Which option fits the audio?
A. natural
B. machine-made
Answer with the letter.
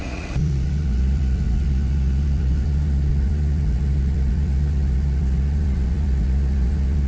B